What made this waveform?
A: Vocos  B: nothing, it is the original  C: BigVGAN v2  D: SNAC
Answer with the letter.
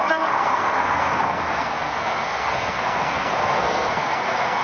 D